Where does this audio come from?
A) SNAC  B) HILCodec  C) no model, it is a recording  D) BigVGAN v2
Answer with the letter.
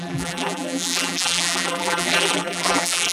D